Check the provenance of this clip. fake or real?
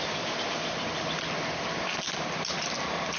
real